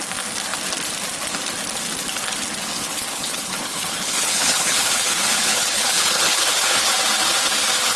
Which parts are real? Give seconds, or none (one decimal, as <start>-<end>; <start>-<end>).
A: 0.0-2.6; 6.9-8.0